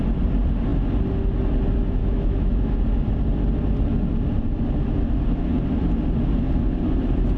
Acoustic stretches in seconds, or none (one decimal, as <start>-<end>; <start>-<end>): 0.0-2.0; 2.8-7.4